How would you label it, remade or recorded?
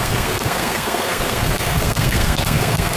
remade